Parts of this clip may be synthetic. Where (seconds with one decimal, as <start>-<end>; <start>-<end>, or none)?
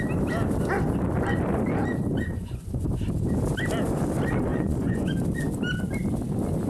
2.3-3.0; 4.5-5.1